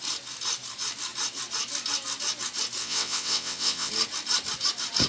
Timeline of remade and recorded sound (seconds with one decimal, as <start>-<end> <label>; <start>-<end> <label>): 0.0-2.8 recorded; 2.8-3.9 remade; 3.9-5.1 recorded